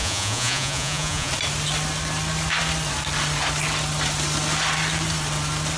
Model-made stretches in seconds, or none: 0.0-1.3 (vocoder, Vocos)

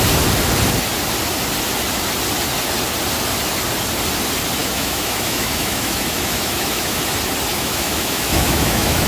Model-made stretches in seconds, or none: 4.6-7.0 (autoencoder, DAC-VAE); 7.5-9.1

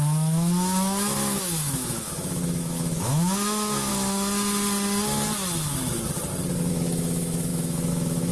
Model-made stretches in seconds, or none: 0.0-3.9 (autoencoder, DAC-VAE); 6.7-8.3